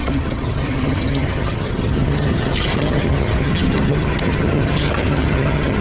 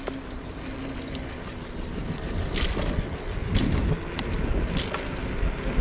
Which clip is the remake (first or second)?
first